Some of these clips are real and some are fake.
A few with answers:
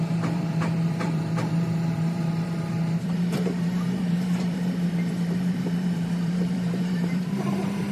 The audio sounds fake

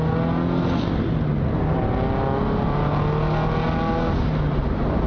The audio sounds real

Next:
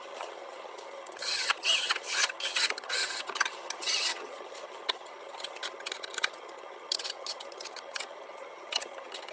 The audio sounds fake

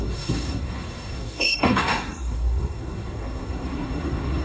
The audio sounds fake